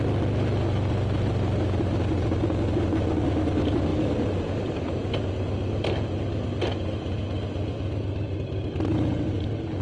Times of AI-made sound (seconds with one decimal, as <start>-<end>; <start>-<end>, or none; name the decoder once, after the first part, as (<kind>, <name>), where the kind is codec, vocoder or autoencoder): none